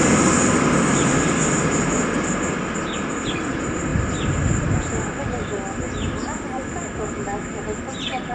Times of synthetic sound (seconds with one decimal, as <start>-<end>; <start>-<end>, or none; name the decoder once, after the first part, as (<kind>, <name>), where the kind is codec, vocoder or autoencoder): none